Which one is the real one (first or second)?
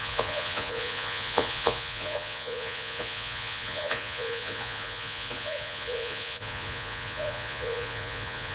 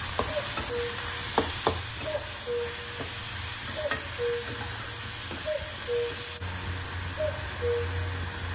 second